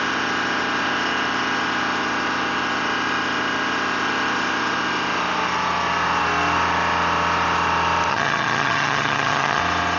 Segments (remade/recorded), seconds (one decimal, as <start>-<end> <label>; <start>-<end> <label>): 0.0-8.1 recorded; 8.1-9.6 remade; 9.6-10.0 recorded